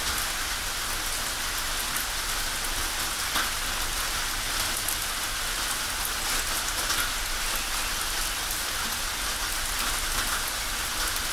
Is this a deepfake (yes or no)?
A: no